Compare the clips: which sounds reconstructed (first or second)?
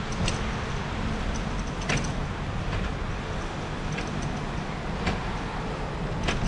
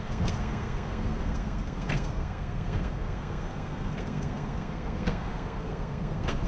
second